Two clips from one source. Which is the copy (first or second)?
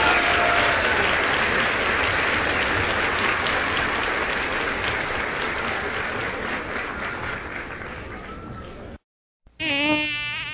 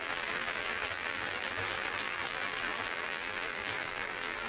second